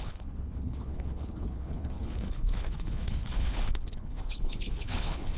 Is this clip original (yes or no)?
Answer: no